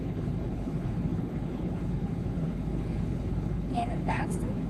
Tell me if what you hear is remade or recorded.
remade